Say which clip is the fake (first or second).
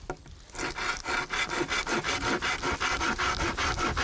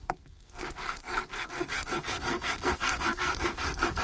second